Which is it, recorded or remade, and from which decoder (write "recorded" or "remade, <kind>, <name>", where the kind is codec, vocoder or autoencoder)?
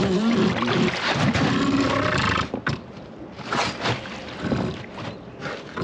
recorded